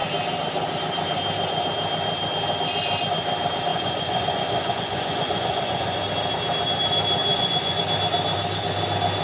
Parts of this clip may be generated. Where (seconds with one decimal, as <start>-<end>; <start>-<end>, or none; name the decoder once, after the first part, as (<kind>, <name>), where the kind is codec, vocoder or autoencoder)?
3.7-6.0 (vocoder, Vocos); 7.3-7.8